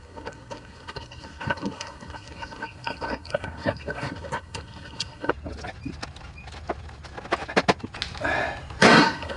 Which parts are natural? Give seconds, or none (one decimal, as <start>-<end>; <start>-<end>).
5.3-8.8